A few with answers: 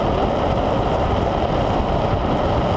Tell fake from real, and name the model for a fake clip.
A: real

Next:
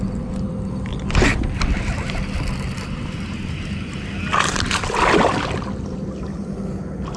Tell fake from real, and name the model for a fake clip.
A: real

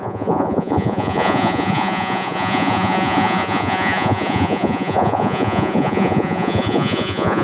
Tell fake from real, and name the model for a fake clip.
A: fake, vocoder, Vocos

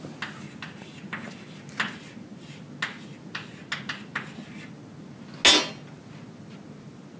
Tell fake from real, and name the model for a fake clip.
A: real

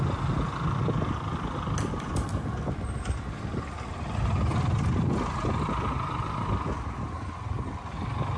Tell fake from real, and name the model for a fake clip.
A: real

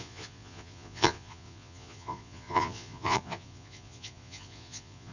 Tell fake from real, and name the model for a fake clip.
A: fake, vocoder, Vocos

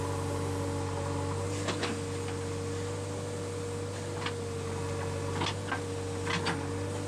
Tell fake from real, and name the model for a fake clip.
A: real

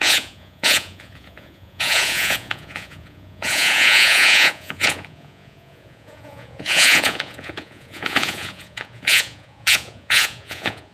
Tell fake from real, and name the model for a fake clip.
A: fake, vocoder, Vocos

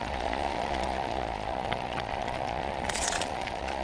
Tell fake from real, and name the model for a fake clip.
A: fake, vocoder, Vocos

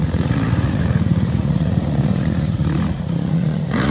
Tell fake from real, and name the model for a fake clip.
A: fake, vocoder, Vocos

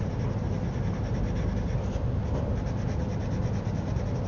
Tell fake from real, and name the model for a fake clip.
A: real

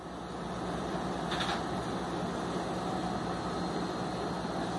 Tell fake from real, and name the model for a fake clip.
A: real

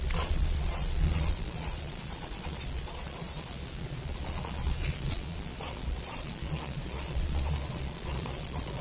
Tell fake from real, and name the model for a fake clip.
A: fake, vocoder, Vocos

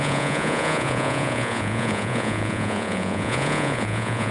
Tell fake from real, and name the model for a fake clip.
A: fake, vocoder, Vocos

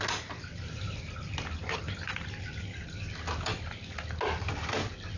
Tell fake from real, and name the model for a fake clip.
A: real